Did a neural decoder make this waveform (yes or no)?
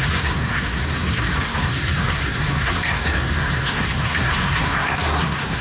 yes